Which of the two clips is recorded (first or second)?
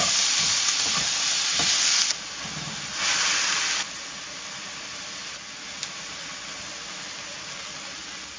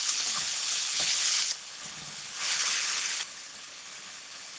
first